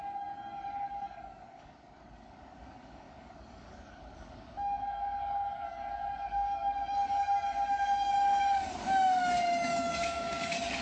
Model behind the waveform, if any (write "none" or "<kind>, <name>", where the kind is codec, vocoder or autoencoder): codec, DAC